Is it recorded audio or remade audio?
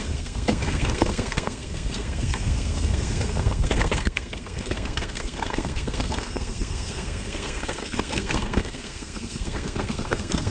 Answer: remade